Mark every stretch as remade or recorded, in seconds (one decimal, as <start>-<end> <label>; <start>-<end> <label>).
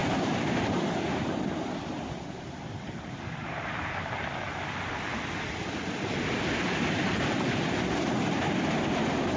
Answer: 0.0-4.1 remade; 4.1-9.4 recorded